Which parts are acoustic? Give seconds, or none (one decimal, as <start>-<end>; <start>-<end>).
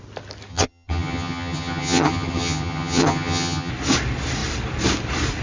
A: 0.0-0.5; 3.7-5.4